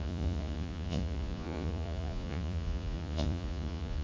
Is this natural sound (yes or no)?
no